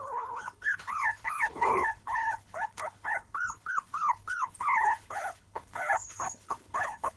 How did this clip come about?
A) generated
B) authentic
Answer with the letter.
A